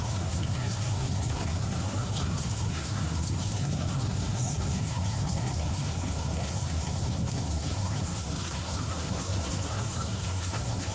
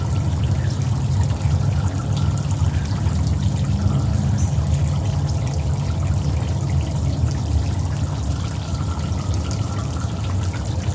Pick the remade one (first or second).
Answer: first